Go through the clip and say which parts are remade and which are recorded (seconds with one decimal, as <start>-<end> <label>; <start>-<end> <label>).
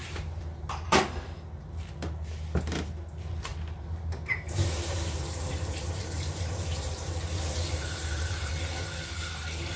0.0-1.0 remade; 1.0-3.5 recorded; 3.5-8.5 remade; 8.5-9.8 recorded